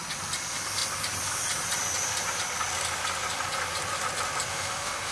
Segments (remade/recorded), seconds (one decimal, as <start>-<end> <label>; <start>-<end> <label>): 0.0-4.5 recorded; 4.5-5.1 remade